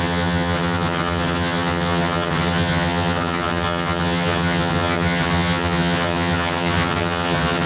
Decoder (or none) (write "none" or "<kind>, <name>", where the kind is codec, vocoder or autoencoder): vocoder, HiFi-GAN